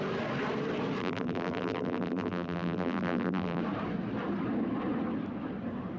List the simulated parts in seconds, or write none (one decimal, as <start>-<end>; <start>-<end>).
1.0-3.6